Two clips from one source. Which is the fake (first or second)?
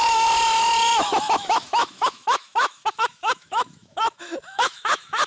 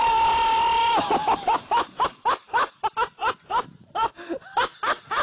first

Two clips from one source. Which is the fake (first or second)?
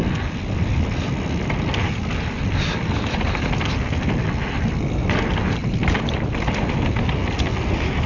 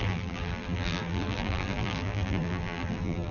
second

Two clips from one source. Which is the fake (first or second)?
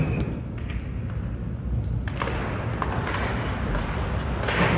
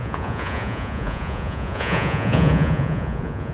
second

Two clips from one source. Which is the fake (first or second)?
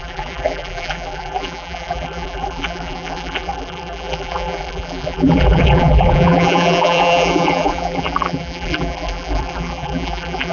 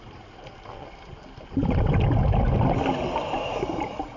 first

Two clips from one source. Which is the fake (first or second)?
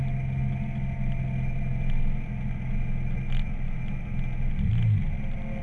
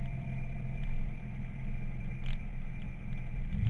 second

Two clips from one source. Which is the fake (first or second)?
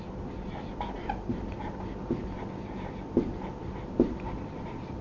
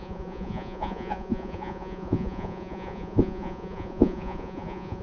second